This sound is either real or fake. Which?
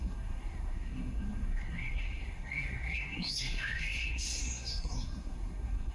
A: fake